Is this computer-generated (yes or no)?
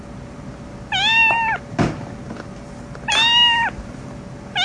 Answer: no